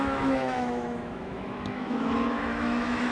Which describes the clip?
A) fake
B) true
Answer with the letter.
A